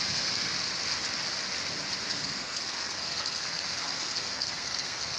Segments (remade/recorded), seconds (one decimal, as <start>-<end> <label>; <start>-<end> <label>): 0.0-0.5 remade; 0.5-2.0 recorded; 2.0-5.2 remade